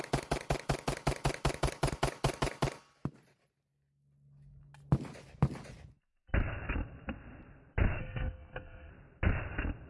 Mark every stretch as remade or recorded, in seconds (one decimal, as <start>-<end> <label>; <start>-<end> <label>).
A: 0.0-8.0 recorded; 8.0-8.9 remade; 8.9-9.9 recorded